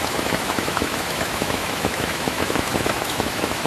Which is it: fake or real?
fake